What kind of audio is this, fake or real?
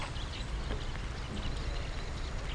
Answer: real